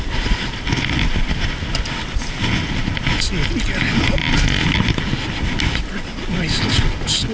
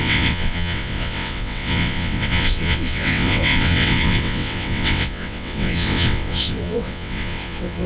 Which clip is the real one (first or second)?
first